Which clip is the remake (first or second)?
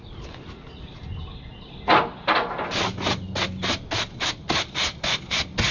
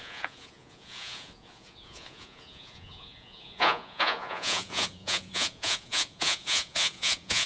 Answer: second